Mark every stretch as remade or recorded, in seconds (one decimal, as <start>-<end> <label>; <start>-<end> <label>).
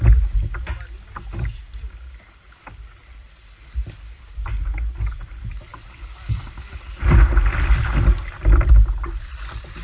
0.0-9.8 recorded